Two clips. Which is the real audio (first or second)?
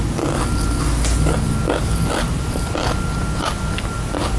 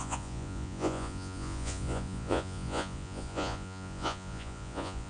first